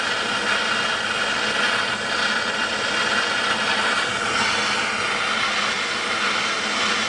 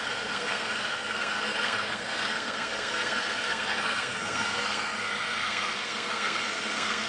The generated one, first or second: second